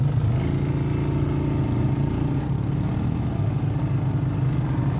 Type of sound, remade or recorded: recorded